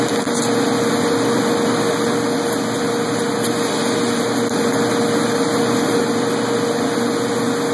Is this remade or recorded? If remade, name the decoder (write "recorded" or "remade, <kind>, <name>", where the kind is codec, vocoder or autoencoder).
recorded